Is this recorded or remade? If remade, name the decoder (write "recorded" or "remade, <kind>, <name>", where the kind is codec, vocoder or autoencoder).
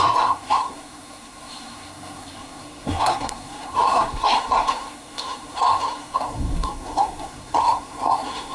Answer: remade, codec, SNAC